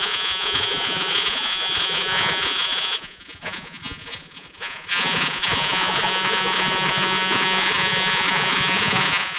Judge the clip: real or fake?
fake